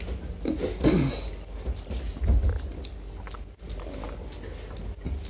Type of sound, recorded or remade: recorded